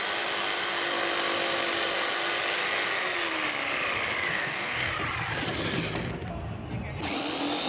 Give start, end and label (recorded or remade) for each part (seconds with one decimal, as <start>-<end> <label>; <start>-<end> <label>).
0.0-4.3 recorded; 4.3-4.9 remade; 4.9-7.7 recorded